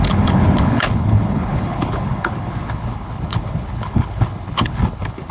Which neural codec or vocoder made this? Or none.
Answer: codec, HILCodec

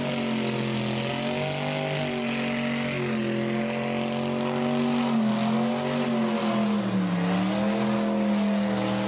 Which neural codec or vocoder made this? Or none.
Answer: none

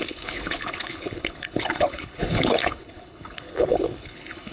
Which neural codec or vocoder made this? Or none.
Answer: codec, HILCodec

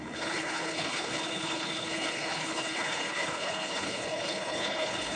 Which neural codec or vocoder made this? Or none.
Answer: codec, HILCodec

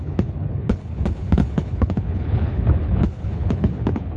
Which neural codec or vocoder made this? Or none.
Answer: codec, HILCodec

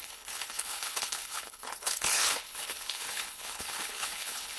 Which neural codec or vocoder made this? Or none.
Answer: codec, HILCodec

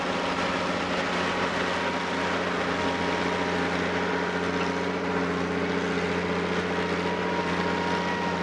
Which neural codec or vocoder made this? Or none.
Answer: none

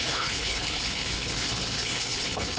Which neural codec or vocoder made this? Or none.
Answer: codec, HILCodec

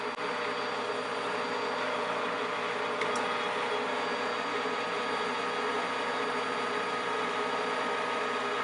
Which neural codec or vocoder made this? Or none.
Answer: none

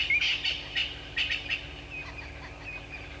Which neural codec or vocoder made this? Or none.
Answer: none